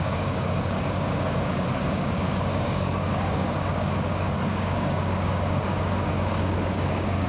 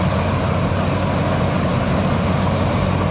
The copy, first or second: first